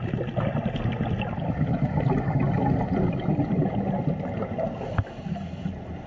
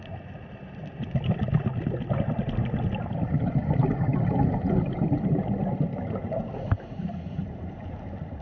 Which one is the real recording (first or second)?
first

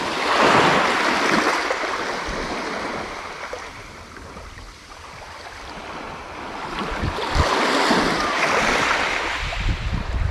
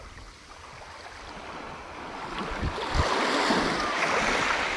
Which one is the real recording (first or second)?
second